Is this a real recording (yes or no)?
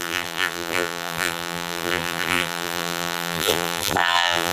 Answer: no